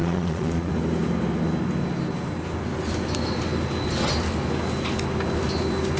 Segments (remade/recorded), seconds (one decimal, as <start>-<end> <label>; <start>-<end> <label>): 0.0-0.7 remade; 0.7-6.0 recorded